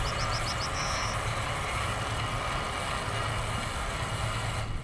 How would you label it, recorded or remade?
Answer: recorded